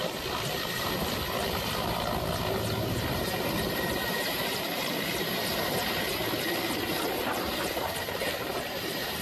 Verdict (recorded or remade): remade